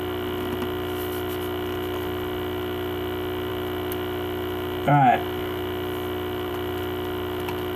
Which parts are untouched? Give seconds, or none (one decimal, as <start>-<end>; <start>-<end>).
0.0-7.8

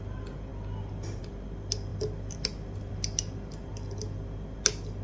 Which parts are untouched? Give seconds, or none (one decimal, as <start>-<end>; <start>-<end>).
0.0-5.0

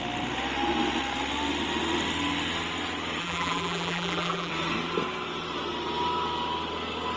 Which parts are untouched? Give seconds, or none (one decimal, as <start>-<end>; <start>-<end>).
0.0-3.2; 4.5-7.2